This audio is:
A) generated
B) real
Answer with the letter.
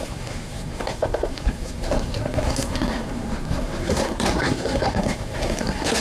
A